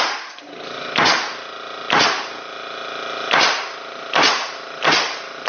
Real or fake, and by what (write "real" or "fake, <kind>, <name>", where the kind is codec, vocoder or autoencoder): real